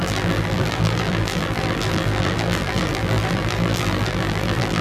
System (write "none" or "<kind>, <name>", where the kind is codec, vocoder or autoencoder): vocoder, BigVGAN v2